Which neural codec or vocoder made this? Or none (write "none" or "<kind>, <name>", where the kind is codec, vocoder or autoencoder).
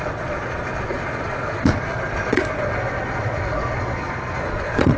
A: vocoder, Vocos